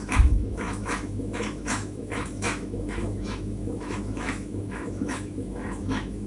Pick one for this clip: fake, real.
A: fake